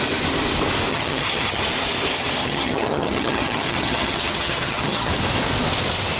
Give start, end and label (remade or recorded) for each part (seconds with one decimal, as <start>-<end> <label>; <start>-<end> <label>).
0.0-0.9 recorded; 0.9-1.6 remade; 1.6-2.4 recorded; 2.4-5.1 remade; 5.1-6.2 recorded